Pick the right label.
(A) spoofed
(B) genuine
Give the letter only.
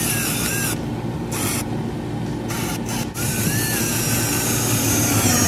B